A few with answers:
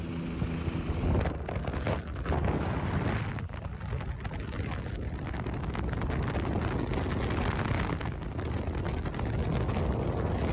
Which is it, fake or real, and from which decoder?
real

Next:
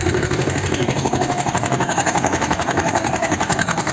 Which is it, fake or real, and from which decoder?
fake, codec, DAC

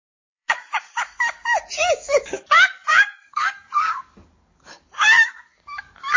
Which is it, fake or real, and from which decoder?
fake, codec, DAC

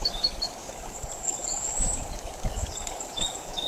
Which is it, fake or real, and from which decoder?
fake, codec, DAC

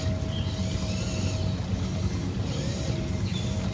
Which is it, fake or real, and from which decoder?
real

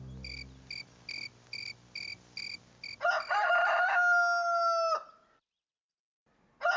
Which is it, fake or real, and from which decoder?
real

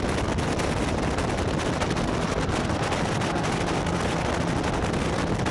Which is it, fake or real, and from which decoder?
real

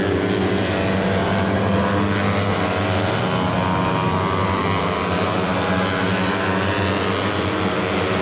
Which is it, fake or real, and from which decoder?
real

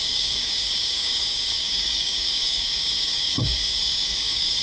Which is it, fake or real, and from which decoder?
fake, codec, DAC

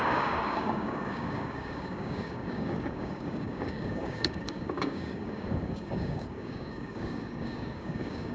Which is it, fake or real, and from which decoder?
fake, codec, DAC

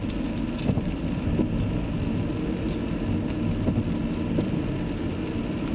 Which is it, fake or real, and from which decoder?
real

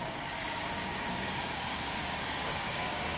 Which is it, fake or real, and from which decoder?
fake, codec, DAC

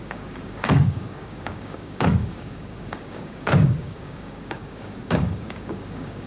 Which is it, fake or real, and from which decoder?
fake, codec, DAC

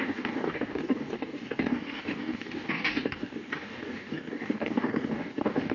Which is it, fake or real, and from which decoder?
fake, codec, DAC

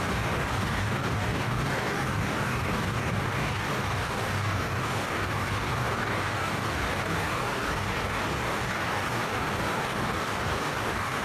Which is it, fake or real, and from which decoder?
fake, codec, DAC